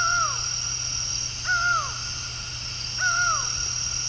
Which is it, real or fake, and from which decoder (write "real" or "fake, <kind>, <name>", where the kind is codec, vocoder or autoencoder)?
real